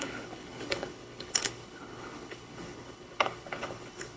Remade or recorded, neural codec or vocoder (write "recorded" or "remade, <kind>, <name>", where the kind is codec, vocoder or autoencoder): remade, codec, HILCodec